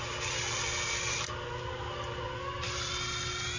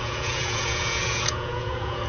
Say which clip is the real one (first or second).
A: first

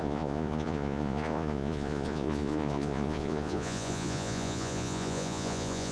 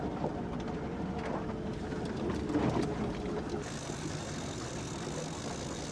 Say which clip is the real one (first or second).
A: second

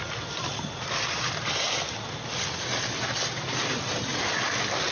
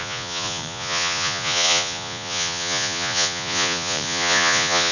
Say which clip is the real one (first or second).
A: first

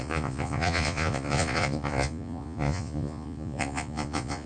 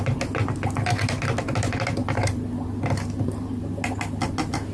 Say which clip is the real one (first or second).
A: second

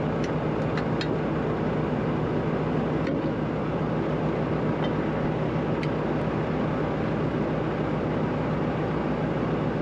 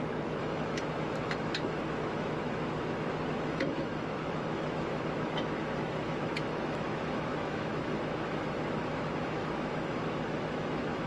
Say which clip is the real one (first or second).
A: first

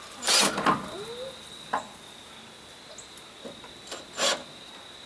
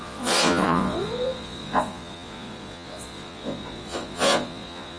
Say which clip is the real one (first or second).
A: first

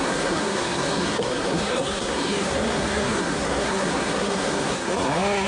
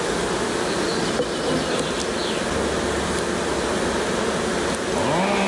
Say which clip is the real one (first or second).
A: second